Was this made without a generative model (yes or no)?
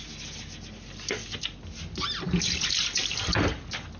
yes